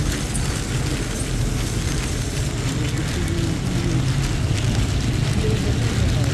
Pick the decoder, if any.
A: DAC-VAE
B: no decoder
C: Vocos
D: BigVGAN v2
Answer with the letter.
B